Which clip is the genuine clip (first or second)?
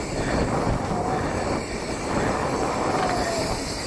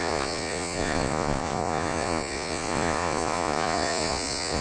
first